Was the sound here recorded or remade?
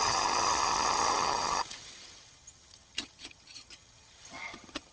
remade